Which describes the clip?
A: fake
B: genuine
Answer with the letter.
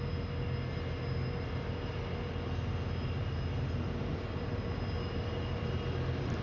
B